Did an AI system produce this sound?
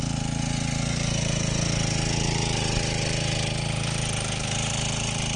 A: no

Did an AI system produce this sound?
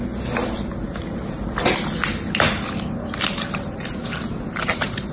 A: no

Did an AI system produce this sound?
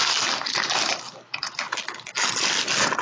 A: no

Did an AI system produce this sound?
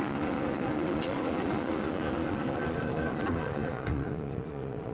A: yes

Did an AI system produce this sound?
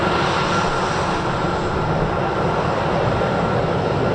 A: no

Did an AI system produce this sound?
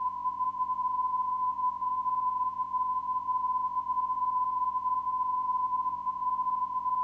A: yes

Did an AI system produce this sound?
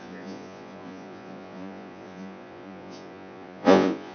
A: yes